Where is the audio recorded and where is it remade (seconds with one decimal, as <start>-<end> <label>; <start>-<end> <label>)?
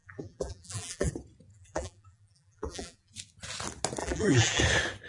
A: 0.0-1.1 remade; 1.1-1.5 recorded; 1.5-3.1 remade; 3.1-4.0 recorded; 4.0-4.6 remade; 4.6-5.1 recorded